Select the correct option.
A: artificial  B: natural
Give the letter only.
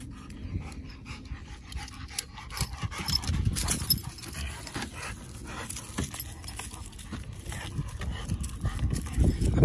B